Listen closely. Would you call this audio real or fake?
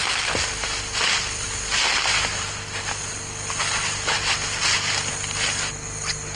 real